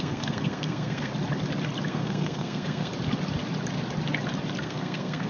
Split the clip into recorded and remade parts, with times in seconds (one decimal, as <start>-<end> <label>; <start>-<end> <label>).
0.0-1.1 remade; 1.1-1.9 recorded; 1.9-2.9 remade; 2.9-4.6 recorded; 4.6-5.3 remade